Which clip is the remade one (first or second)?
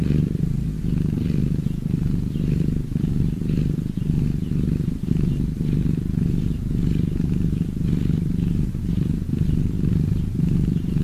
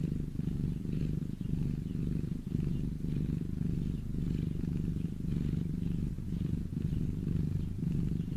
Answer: first